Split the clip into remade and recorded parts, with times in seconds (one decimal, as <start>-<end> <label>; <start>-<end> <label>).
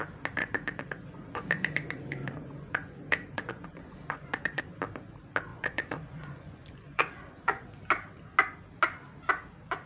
0.0-0.4 recorded; 0.4-4.6 remade; 4.6-5.5 recorded; 5.5-7.8 remade; 7.8-9.9 recorded